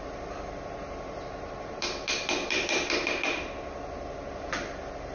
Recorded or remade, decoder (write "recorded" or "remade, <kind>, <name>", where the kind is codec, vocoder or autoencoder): remade, vocoder, BigVGAN v2